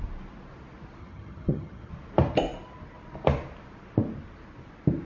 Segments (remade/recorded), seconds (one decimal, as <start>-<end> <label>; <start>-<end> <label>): 0.0-1.0 recorded; 1.0-1.9 remade; 1.9-5.0 recorded